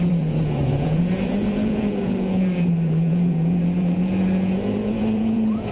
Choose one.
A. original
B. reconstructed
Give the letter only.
B